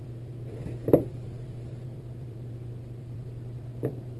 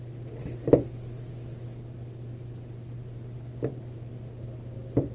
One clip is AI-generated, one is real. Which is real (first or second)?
second